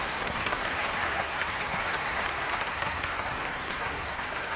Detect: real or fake fake